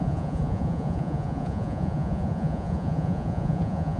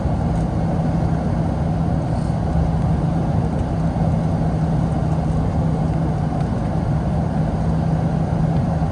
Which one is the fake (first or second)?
first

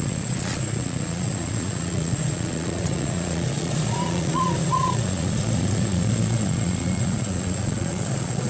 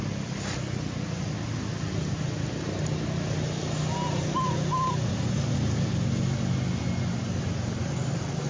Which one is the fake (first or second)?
first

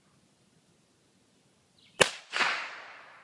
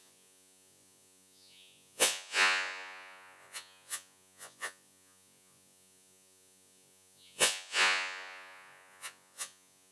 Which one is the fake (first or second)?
second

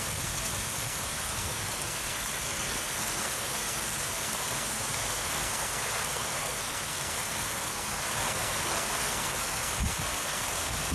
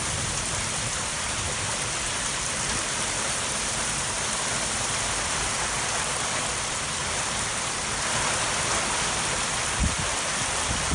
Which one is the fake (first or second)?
first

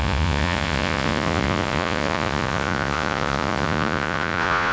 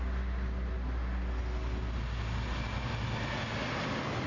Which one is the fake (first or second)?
first